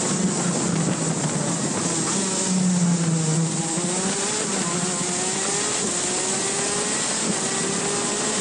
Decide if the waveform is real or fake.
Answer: real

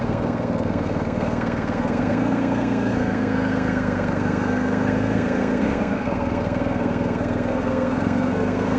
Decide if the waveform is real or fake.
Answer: fake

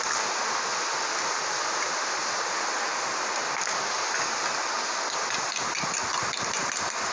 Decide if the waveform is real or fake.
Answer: real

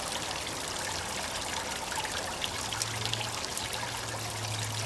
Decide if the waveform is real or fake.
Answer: real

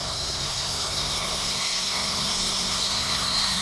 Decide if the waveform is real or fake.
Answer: fake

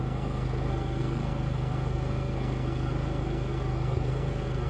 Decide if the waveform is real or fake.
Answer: fake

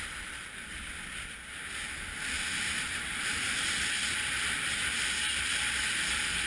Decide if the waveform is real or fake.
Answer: real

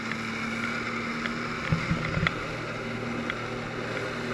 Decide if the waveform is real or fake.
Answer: real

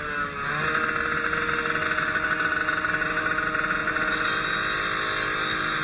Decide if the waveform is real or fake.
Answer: real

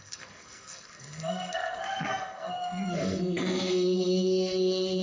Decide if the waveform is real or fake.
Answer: fake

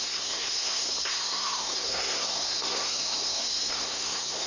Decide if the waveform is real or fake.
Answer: fake